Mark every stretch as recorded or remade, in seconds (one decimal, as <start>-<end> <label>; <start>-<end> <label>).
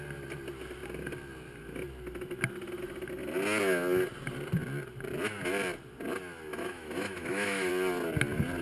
0.0-6.5 recorded; 6.5-7.7 remade; 7.7-8.6 recorded